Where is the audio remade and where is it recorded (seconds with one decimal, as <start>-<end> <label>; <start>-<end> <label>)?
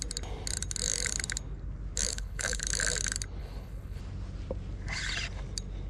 0.0-2.1 recorded; 2.1-2.6 remade; 2.6-3.4 recorded; 3.4-4.0 remade; 4.0-5.9 recorded